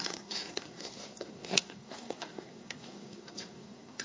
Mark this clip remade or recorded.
remade